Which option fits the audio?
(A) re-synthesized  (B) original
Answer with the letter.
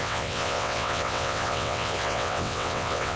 A